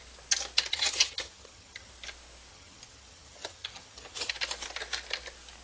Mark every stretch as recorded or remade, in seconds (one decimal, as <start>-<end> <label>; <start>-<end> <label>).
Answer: 0.0-0.7 recorded; 0.7-1.9 remade; 1.9-2.5 recorded; 2.5-4.3 remade; 4.3-5.6 recorded